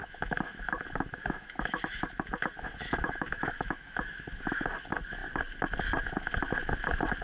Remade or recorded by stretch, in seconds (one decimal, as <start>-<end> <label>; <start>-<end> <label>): 0.0-4.3 remade; 4.3-7.2 recorded